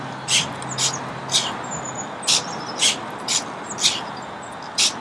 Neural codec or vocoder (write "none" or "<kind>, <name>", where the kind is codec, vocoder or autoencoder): none